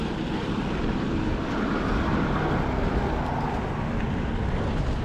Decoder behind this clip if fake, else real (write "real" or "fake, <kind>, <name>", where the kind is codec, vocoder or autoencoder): real